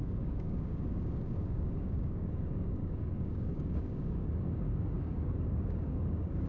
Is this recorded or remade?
remade